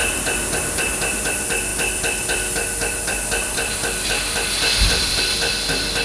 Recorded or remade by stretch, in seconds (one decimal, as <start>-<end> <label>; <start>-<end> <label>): 0.0-0.9 remade; 0.9-1.7 recorded; 1.7-5.2 remade; 5.2-6.0 recorded